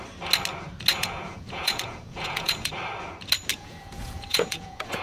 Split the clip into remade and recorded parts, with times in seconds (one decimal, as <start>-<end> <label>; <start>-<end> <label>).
0.0-0.9 recorded; 0.9-2.7 remade; 2.7-3.5 recorded; 3.5-5.0 remade